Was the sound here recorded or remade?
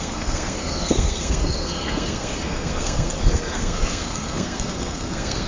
remade